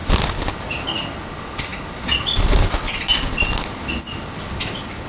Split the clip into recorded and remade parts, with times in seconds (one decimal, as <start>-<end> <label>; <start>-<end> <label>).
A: 0.0-5.1 recorded